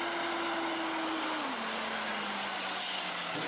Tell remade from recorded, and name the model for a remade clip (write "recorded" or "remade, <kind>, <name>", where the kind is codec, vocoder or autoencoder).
recorded